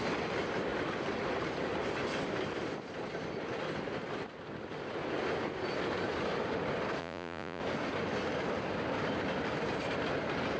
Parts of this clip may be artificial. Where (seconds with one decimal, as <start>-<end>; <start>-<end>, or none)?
7.0-7.6